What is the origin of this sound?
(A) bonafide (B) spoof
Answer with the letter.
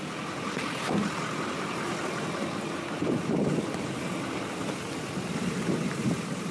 A